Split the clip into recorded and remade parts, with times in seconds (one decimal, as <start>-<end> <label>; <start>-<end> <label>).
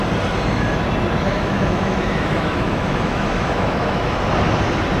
0.0-1.3 recorded; 1.3-4.3 remade; 4.3-5.0 recorded